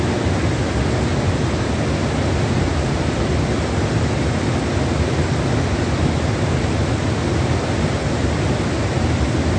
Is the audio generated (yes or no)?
no